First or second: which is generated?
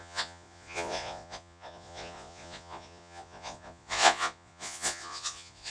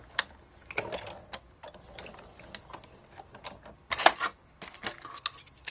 first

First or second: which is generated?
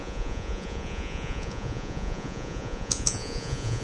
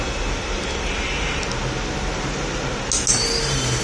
first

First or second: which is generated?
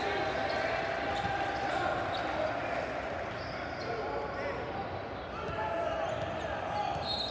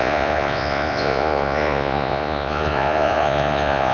second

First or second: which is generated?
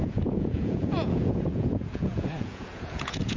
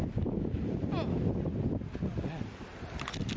first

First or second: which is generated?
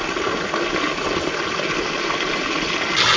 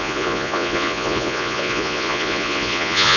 second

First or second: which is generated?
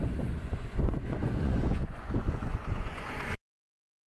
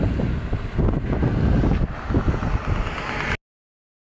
first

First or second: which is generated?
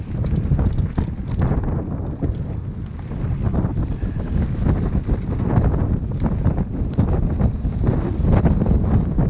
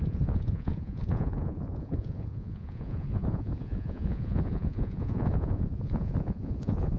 second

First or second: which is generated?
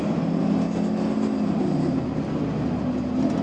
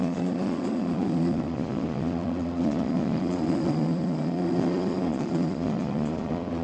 second